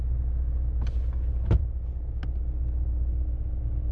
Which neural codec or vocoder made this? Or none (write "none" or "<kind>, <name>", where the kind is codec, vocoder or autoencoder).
none